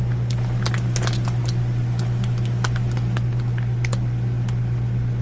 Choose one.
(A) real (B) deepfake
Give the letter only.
A